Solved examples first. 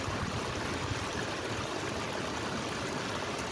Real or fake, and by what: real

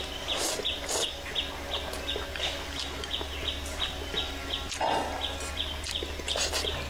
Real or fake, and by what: real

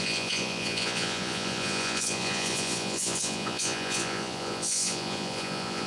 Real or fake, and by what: fake, vocoder, Vocos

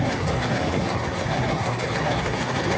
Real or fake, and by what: fake, codec, SNAC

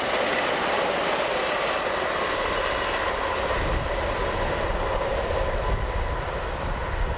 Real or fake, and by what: real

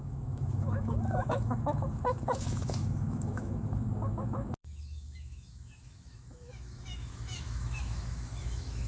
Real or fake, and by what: fake, autoencoder, DAC-VAE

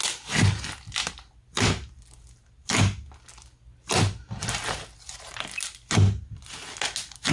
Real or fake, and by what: real